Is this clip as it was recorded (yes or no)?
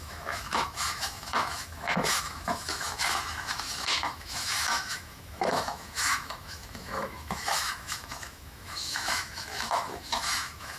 no